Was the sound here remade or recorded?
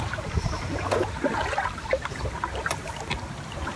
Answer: recorded